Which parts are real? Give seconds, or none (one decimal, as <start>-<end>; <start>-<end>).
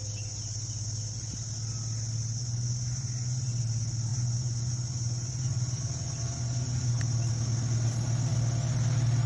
0.0-2.4; 3.6-4.1; 7.0-9.3